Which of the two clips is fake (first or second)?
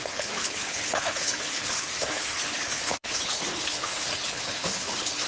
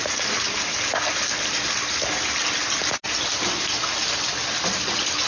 first